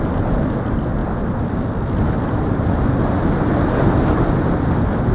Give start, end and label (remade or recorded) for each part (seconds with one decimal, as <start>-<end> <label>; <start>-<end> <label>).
0.0-5.1 recorded